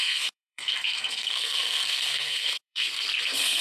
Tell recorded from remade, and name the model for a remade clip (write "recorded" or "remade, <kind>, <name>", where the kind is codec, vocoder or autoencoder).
remade, codec, SNAC